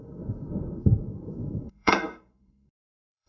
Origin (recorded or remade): remade